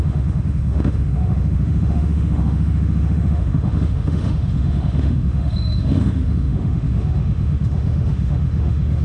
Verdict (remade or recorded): remade